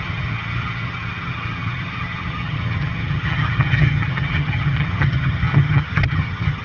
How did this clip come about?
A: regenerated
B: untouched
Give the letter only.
A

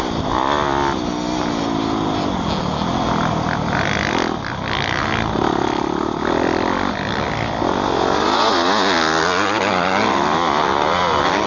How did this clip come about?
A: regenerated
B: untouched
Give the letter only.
B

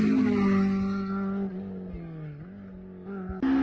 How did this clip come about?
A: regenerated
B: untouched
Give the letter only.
B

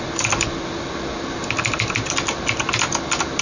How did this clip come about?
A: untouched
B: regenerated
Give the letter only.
A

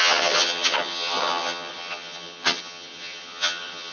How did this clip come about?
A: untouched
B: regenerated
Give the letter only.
B